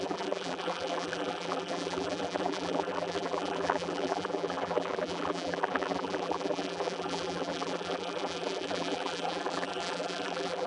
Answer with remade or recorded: remade